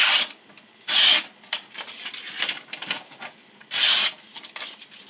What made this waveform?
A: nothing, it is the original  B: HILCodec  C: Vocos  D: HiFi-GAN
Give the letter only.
A